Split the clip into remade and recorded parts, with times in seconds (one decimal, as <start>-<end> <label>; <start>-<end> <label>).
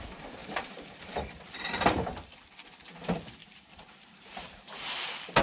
0.0-0.4 recorded; 0.4-1.4 remade; 1.4-3.4 recorded; 3.4-5.0 remade; 5.0-5.4 recorded